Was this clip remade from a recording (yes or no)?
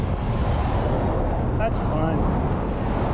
no